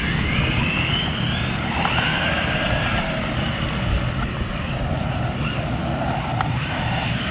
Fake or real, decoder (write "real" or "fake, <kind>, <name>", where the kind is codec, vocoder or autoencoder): real